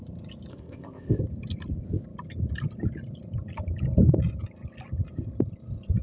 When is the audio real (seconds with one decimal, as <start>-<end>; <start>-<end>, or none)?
0.0-0.5; 1.2-6.0